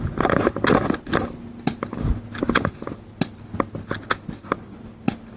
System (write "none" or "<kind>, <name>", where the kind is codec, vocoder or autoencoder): none